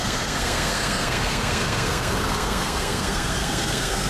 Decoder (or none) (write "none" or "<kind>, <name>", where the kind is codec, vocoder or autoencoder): codec, SNAC